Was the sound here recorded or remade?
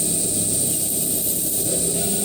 recorded